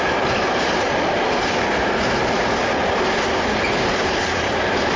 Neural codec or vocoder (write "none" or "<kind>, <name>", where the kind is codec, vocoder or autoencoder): none